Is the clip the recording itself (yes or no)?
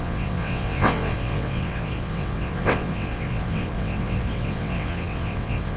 no